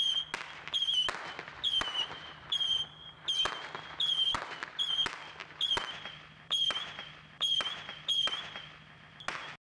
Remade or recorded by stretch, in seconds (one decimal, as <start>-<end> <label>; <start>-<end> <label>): 0.0-9.8 recorded